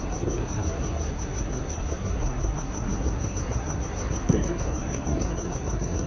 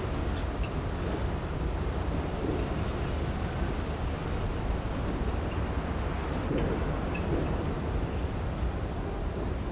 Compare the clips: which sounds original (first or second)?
second